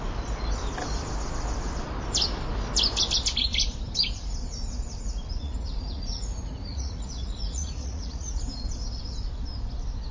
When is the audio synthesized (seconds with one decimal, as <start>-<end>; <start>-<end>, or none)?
5.4-8.6